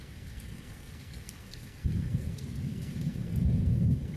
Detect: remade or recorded remade